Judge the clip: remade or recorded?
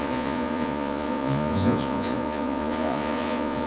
remade